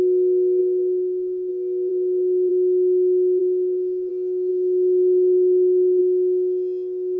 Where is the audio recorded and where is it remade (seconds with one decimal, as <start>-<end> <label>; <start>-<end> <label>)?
0.0-0.6 recorded; 0.6-1.5 remade; 1.5-1.9 recorded; 1.9-2.5 remade; 2.5-3.4 recorded; 3.4-4.1 remade; 4.1-4.5 recorded; 4.5-6.0 remade; 6.0-7.2 recorded